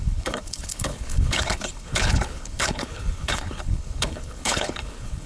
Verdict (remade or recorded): remade